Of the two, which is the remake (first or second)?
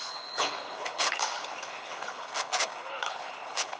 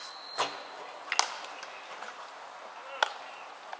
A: first